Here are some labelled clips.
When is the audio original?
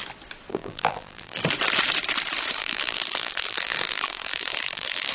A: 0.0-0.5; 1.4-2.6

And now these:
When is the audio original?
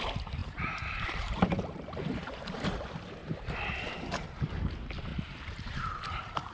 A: 0.0-0.4; 2.7-3.2; 4.4-5.1